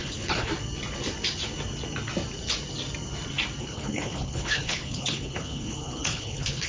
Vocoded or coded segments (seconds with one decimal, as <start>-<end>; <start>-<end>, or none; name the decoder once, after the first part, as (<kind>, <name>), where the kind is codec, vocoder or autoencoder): 0.0-0.5 (codec, HILCodec); 3.6-6.7